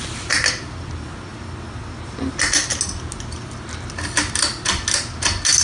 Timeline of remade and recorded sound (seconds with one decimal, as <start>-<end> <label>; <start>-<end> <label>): 0.0-5.6 recorded